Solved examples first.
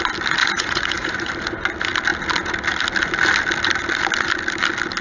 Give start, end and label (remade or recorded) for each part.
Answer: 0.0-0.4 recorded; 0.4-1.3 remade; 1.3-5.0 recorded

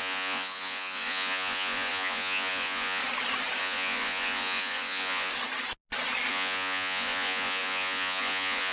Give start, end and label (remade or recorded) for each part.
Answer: 0.0-3.0 remade; 3.0-3.6 recorded; 3.6-5.3 remade; 5.3-6.3 recorded; 6.3-8.7 remade

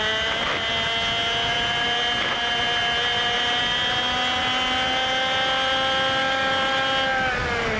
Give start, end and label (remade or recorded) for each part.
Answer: 0.0-7.8 recorded

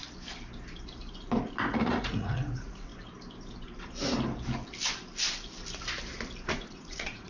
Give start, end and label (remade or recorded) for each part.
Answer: 0.0-1.6 recorded; 1.6-2.9 remade; 2.9-6.5 recorded; 6.5-7.3 remade

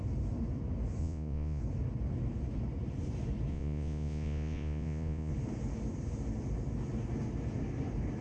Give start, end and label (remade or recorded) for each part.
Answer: 0.0-1.0 recorded; 1.0-1.6 remade; 1.6-3.5 recorded; 3.5-5.3 remade; 5.3-8.2 recorded